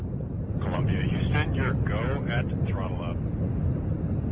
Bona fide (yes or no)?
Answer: yes